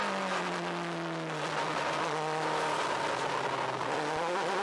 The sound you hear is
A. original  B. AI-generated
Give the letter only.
A